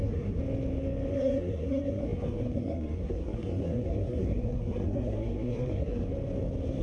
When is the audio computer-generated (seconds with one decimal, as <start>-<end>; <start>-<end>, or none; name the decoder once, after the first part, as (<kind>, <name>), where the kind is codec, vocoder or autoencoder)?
0.0-0.4 (codec, SNAC); 1.1-6.1